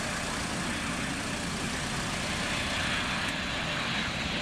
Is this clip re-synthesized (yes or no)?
no